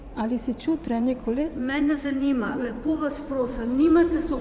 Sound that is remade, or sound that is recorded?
remade